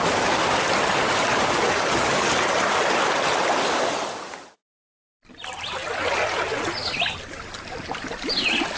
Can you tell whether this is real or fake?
real